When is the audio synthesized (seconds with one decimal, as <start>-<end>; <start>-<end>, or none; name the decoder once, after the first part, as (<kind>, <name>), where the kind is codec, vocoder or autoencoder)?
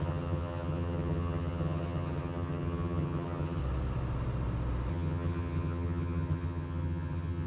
0.0-3.6 (vocoder, HiFi-GAN); 4.9-7.5